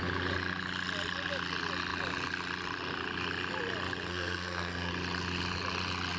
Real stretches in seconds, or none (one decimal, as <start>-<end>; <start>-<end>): 0.0-4.1; 4.9-6.2